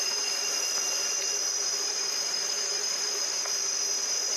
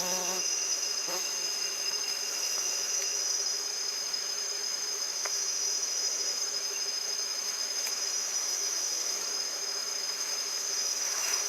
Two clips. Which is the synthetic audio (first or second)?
second